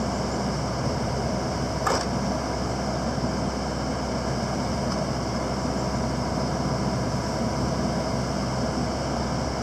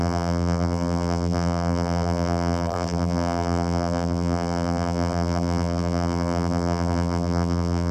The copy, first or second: second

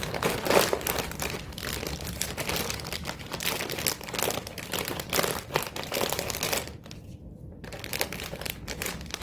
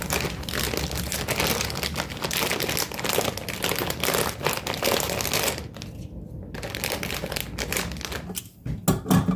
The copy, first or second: first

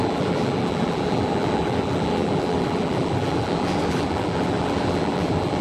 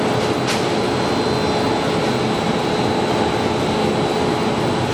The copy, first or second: first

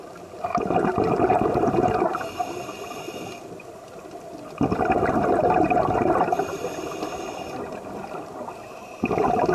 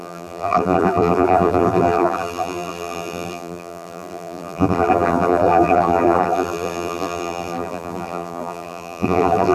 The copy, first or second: second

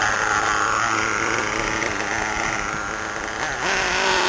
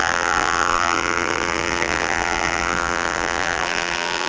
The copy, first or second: second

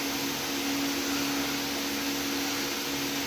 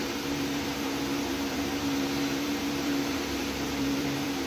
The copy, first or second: second